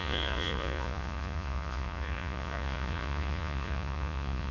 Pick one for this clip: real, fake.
fake